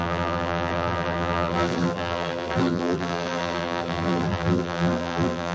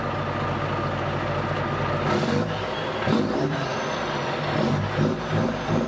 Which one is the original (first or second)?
second